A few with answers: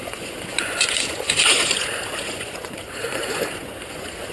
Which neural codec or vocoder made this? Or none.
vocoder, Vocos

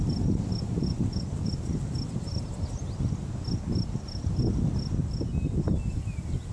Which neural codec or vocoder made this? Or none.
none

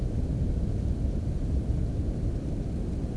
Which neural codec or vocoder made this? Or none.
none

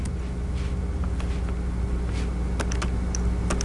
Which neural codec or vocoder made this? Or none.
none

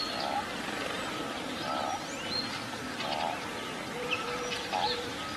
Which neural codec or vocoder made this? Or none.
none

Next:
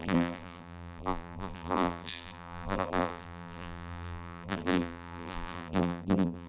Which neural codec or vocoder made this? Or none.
vocoder, BigVGAN v2